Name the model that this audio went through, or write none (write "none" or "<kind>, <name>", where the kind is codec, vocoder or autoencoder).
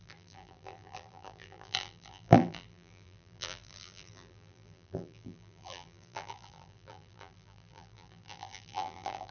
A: vocoder, BigVGAN v2